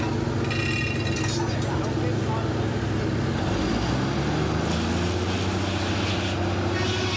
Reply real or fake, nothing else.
real